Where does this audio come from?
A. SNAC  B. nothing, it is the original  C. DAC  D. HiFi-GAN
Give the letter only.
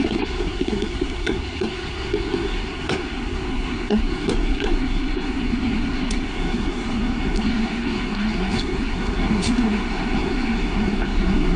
A